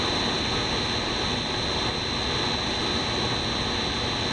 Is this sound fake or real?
real